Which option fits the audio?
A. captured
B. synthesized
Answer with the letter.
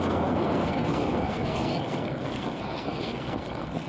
B